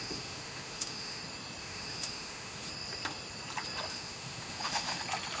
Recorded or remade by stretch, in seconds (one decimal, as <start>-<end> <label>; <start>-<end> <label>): 0.0-1.2 remade; 1.2-1.6 recorded; 1.6-2.7 remade; 2.7-3.9 recorded; 3.9-5.0 remade; 5.0-5.4 recorded